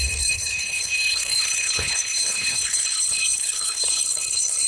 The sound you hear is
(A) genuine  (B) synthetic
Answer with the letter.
B